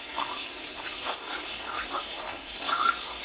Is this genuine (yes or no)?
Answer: no